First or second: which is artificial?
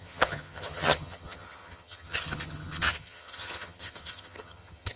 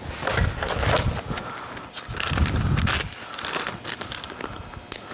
first